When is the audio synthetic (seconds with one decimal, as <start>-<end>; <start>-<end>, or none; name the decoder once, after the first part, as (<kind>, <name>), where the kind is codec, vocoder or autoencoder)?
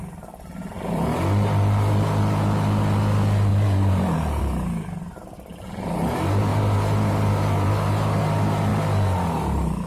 3.5-4.4 (vocoder, BigVGAN v2); 6.5-8.2